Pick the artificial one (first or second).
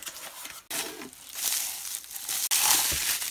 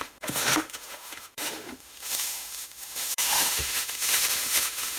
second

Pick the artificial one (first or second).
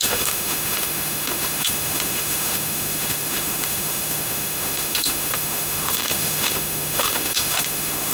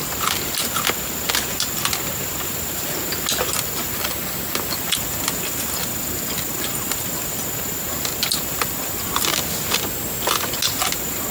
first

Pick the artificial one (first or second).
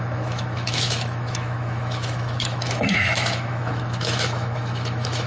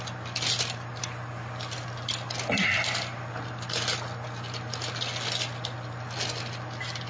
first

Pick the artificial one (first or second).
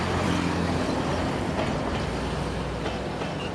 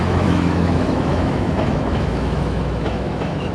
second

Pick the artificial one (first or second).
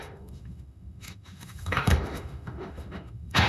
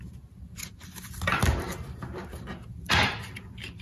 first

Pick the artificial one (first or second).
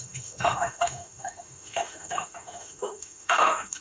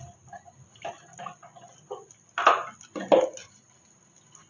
first